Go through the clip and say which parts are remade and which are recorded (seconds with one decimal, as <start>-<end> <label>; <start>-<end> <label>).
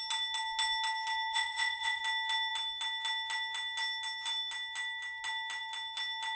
0.0-1.3 recorded; 1.3-2.0 remade; 2.0-6.3 recorded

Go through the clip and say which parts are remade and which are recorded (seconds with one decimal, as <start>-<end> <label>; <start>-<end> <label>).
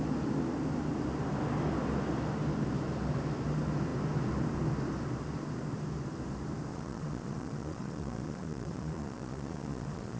0.0-6.7 recorded; 6.7-10.2 remade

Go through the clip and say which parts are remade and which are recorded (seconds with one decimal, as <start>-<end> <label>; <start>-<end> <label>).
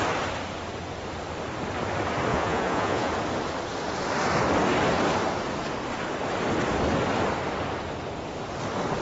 0.0-2.3 recorded; 2.3-3.1 remade; 3.1-9.0 recorded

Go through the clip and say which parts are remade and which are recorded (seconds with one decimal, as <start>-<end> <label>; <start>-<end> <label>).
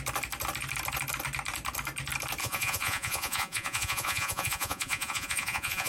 0.0-2.4 recorded; 2.4-5.9 remade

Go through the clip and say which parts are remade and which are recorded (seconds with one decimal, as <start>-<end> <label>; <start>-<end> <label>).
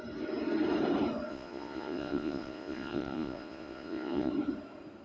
0.0-1.3 recorded; 1.3-4.3 remade; 4.3-5.0 recorded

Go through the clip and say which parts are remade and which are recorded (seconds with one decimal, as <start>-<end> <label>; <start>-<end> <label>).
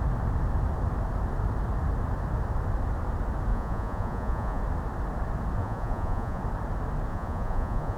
0.0-3.5 recorded; 3.5-4.6 remade; 4.6-5.6 recorded; 5.6-6.4 remade; 6.4-7.1 recorded; 7.1-8.0 remade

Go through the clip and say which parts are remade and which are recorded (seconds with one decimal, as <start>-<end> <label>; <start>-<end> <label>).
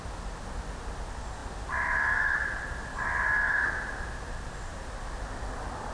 0.0-5.9 recorded